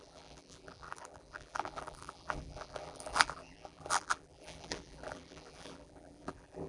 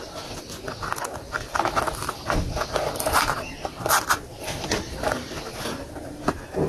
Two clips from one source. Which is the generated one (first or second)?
first